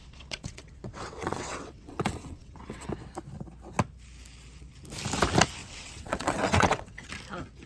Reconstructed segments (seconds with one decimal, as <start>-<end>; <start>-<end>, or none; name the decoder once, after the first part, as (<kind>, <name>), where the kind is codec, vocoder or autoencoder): 0.0-2.9 (vocoder, WaveNeXt); 5.6-7.1